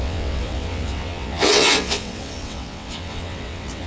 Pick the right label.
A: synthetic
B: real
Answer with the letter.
A